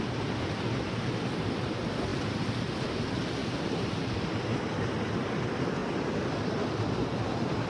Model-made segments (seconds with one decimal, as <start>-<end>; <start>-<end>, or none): 2.1-3.0; 5.8-6.5